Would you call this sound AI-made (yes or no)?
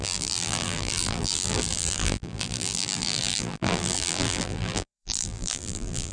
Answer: yes